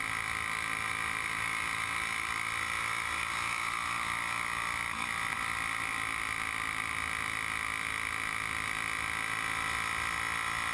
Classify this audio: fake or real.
real